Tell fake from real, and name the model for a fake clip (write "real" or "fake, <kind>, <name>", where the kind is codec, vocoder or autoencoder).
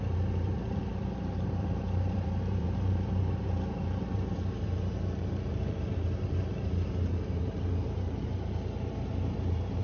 fake, vocoder, BigVGAN v2